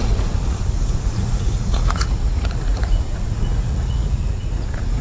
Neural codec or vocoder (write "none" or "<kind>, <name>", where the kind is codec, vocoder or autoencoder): vocoder, Vocos